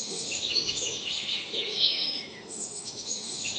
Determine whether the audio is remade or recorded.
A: remade